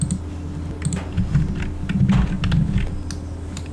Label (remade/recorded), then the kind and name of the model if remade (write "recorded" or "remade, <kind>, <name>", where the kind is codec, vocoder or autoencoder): recorded